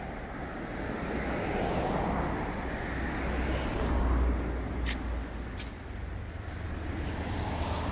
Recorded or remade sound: recorded